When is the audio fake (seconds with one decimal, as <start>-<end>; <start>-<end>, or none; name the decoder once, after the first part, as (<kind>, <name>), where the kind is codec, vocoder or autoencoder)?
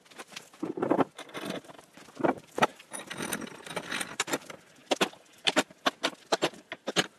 2.7-4.2 (vocoder, BigVGAN v2); 4.8-5.8